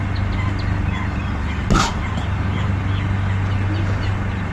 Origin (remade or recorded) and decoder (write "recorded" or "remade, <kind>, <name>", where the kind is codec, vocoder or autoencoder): recorded